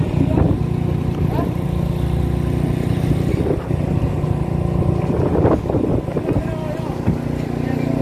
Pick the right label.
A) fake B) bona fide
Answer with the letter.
B